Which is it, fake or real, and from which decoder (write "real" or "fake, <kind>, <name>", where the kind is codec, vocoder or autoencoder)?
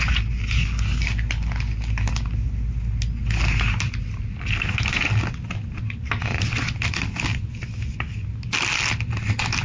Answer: real